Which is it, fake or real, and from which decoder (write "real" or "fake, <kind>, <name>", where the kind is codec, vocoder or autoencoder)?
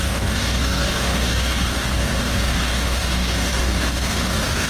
fake, codec, DAC